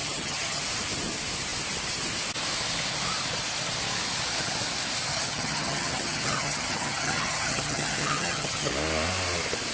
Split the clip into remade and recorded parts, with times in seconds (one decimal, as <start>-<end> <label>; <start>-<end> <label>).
0.0-0.6 remade; 0.6-5.1 recorded; 5.1-8.7 remade; 8.7-9.7 recorded